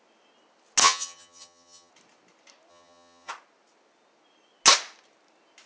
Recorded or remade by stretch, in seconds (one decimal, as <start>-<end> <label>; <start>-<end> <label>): 0.0-0.8 recorded; 0.8-1.9 remade; 1.9-2.7 recorded; 2.7-3.3 remade; 3.3-5.7 recorded